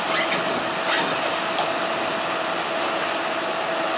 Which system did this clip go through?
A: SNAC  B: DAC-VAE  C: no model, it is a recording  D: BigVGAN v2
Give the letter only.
C